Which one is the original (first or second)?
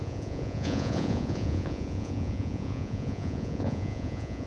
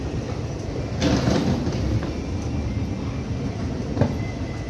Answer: second